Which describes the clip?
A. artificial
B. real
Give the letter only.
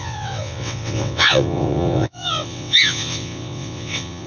A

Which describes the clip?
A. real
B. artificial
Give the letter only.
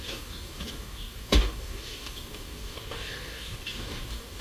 B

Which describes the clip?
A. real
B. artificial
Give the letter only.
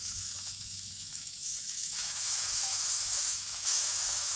B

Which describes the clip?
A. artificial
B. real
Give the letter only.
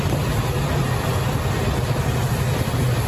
B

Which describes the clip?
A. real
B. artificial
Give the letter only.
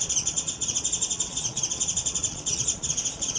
B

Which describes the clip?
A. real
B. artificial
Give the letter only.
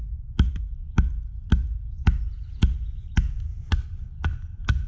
A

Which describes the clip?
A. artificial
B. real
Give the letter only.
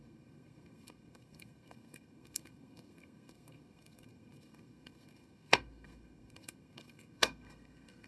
A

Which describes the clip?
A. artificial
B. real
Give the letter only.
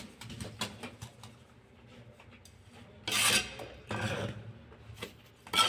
B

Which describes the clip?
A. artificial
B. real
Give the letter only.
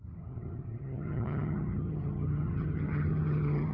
A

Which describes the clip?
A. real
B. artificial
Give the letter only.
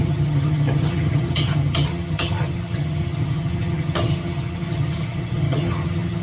B